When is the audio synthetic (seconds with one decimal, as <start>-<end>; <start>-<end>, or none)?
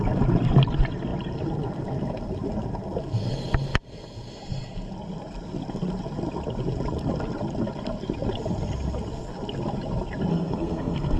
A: 10.3-11.2